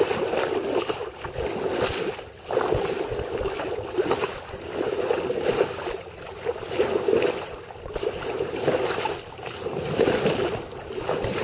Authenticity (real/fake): real